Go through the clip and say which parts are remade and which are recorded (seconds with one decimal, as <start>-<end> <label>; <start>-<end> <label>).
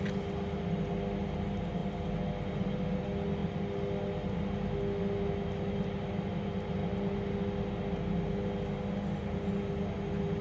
0.0-10.4 recorded